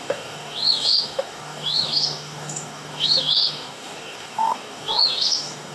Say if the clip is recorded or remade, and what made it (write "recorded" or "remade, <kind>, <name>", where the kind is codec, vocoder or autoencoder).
remade, codec, DAC